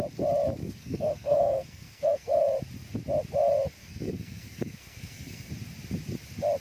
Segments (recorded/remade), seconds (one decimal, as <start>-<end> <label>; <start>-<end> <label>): 0.0-0.6 recorded; 0.6-2.4 remade; 2.4-3.8 recorded; 3.8-5.5 remade; 5.5-6.6 recorded

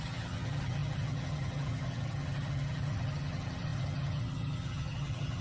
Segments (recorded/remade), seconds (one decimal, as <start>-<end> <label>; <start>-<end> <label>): 0.0-5.4 remade

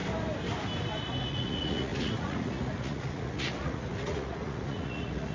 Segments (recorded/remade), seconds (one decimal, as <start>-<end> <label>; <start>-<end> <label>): 0.0-1.2 recorded; 1.2-5.3 remade

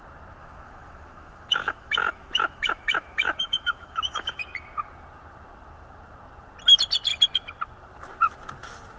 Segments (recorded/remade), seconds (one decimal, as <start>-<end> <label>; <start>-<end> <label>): 0.0-0.4 recorded; 0.4-4.4 remade; 4.4-9.0 recorded

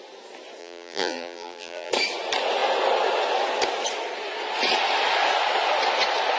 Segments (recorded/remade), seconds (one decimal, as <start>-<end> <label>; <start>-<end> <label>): 0.0-0.6 recorded; 0.6-1.9 remade; 1.9-6.4 recorded

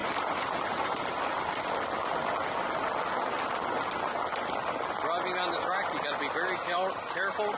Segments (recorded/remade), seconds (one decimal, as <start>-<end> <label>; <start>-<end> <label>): 0.0-0.8 remade; 0.8-7.6 recorded

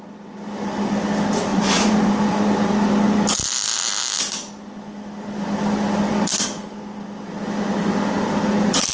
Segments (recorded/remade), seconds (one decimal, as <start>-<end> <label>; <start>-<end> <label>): 0.0-1.5 recorded; 1.5-2.1 remade; 2.1-8.9 recorded

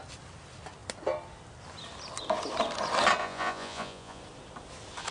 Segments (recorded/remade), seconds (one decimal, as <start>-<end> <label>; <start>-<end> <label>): 0.0-3.2 recorded; 3.2-4.2 remade; 4.2-5.1 recorded